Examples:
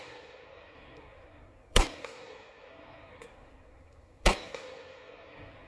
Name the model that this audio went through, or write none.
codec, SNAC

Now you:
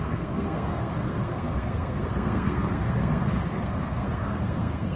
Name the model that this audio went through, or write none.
codec, SNAC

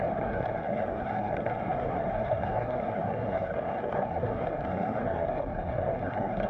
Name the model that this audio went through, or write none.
codec, SNAC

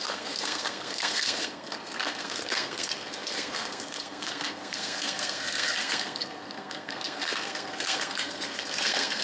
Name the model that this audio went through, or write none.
codec, SNAC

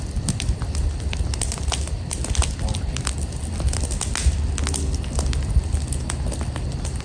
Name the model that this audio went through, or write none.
none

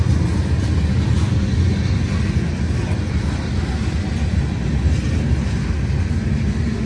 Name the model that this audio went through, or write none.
none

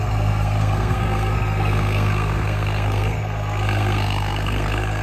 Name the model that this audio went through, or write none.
codec, SNAC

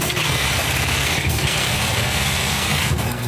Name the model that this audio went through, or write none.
codec, SNAC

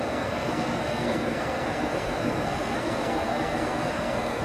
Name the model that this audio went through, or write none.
codec, SNAC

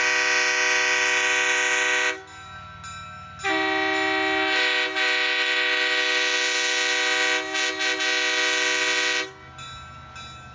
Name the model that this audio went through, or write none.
none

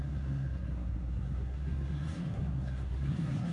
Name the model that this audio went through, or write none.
codec, SNAC